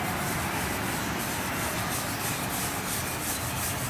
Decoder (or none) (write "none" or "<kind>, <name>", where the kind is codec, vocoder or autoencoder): none